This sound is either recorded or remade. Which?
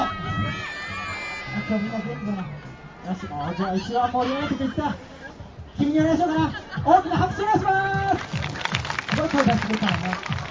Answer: recorded